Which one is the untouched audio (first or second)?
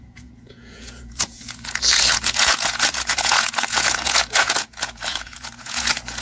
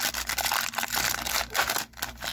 second